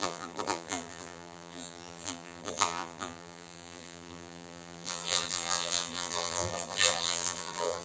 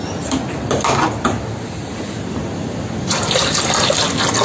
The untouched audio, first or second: second